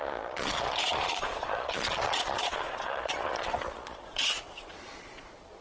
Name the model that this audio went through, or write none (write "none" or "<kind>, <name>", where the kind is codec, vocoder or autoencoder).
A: vocoder, Vocos